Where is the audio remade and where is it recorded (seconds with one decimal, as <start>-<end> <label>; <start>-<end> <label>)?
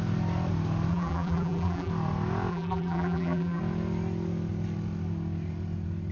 0.0-0.9 recorded; 0.9-1.9 remade; 1.9-2.5 recorded; 2.5-3.6 remade; 3.6-6.1 recorded